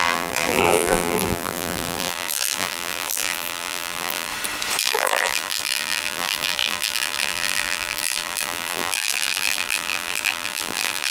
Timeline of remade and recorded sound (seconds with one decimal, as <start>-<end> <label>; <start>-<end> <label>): 0.0-4.3 remade; 4.3-4.8 recorded; 4.8-11.1 remade